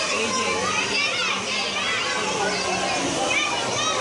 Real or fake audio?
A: real